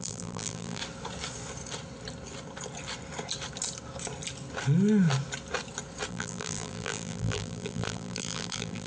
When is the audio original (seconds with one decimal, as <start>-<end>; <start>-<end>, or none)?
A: 0.8-6.1